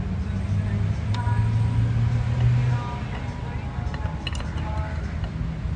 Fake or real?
real